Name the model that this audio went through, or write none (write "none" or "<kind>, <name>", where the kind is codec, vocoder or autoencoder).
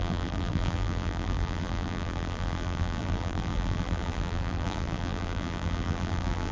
vocoder, BigVGAN v2